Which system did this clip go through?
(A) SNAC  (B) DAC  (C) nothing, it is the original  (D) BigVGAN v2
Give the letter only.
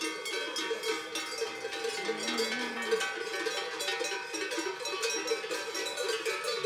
C